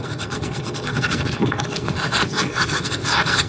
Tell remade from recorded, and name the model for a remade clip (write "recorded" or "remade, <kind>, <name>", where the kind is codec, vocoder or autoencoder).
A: remade, codec, SNAC